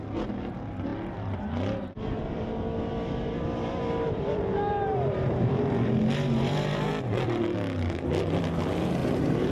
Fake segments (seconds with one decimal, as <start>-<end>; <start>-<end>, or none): 4.5-6.9; 9.0-9.5